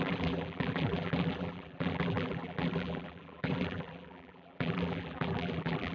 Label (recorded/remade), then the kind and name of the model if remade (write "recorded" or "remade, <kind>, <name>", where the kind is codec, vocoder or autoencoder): remade, vocoder, BigVGAN v2